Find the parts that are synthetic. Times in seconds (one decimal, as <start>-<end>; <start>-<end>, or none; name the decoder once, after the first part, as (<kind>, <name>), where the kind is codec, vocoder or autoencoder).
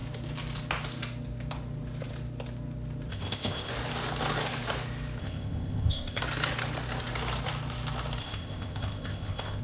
3.1-3.7 (codec, ZipCodec); 5.2-6.2; 8.2-9.6